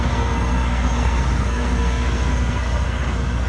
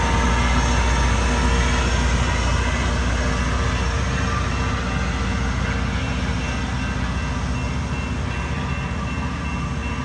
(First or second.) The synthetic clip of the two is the first